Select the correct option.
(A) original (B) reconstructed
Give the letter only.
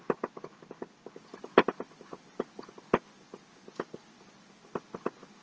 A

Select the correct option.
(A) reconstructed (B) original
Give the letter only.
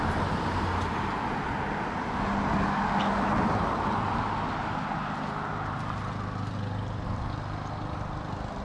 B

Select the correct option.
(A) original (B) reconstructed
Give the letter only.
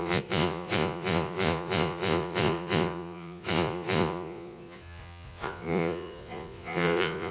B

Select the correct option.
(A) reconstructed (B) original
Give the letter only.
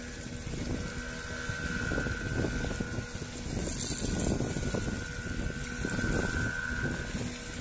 B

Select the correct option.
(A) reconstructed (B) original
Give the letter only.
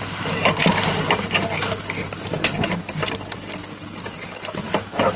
B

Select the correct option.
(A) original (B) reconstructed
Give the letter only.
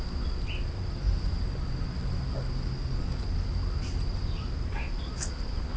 A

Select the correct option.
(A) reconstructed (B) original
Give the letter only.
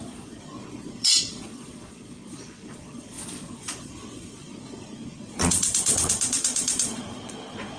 A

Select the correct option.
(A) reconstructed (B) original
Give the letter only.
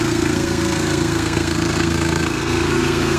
A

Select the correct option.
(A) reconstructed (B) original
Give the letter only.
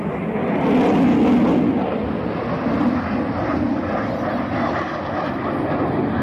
B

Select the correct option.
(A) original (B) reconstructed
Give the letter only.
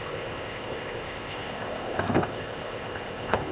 B